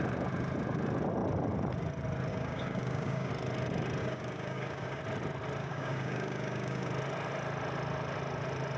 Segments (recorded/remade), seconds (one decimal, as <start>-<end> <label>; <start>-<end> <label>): 0.0-2.3 recorded; 2.3-3.3 remade; 3.3-4.0 recorded; 4.0-5.0 remade; 5.0-5.6 recorded; 5.6-6.9 remade; 6.9-8.8 recorded